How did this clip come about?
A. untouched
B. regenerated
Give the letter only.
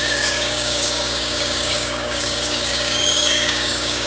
B